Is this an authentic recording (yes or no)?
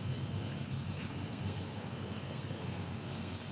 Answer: no